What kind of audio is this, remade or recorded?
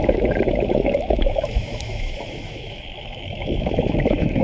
remade